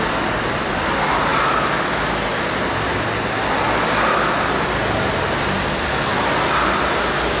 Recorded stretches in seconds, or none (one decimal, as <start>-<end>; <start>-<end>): 0.0-7.4